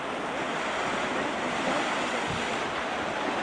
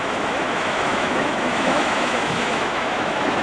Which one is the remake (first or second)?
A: second